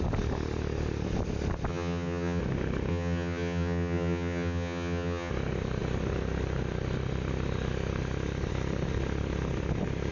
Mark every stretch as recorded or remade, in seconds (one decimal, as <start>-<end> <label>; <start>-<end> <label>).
0.0-1.7 recorded; 1.7-2.4 remade; 2.4-2.9 recorded; 2.9-5.3 remade; 5.3-10.1 recorded